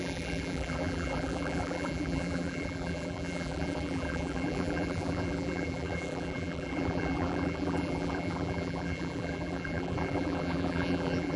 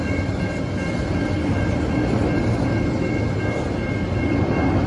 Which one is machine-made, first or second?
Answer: first